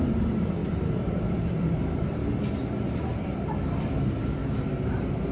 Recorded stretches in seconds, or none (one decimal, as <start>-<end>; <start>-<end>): 2.2-3.0